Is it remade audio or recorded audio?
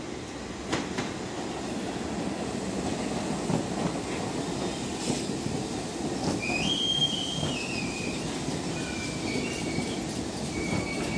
recorded